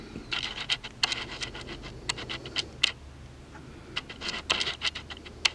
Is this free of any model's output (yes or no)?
yes